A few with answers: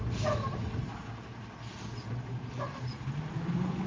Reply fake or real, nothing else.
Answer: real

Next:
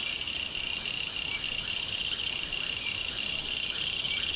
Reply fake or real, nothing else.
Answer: real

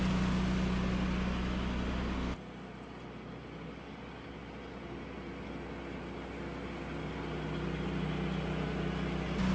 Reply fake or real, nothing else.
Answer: real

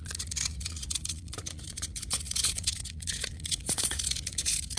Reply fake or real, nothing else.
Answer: fake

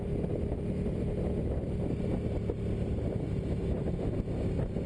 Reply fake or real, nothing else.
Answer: real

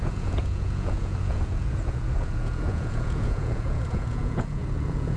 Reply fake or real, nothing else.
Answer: fake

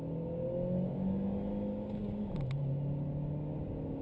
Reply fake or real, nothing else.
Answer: real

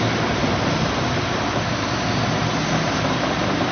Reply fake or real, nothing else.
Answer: real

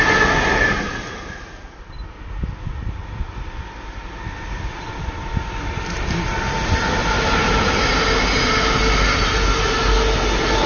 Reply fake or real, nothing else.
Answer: real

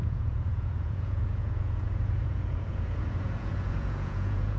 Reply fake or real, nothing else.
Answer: fake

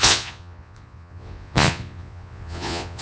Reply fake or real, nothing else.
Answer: fake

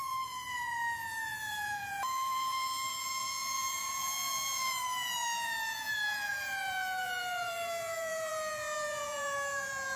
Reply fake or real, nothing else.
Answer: fake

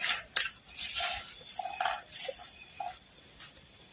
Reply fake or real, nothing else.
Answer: real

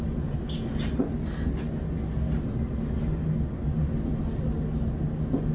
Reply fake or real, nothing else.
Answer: real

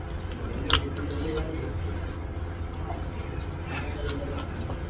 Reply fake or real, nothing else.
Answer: real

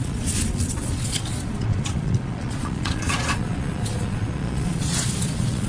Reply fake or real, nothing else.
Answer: fake